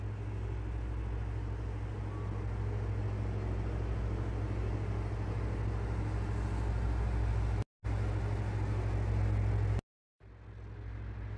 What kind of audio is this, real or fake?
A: real